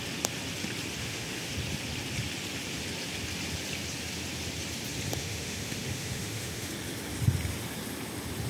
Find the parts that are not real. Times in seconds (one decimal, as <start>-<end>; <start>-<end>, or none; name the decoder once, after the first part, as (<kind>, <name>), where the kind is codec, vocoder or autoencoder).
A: 1.0-1.5 (autoencoder, DAC-VAE); 5.2-6.7